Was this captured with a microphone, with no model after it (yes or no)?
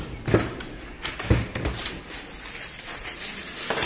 yes